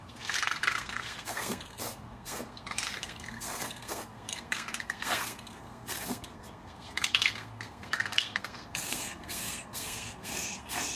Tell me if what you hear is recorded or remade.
remade